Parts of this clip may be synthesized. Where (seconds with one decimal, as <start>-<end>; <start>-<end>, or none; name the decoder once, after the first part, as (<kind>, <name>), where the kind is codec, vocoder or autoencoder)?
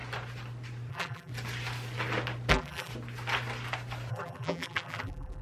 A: 0.9-1.3 (vocoder, BigVGAN v2); 2.5-2.9; 4.1-5.4